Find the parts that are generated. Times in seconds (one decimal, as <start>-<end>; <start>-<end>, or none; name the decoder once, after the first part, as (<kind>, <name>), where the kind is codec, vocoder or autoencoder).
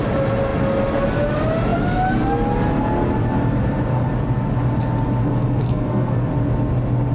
5.2-6.3 (codec, SNAC)